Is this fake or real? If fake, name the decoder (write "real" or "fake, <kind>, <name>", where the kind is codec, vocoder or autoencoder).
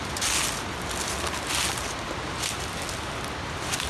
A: real